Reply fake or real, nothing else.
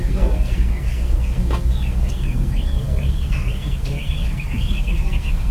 fake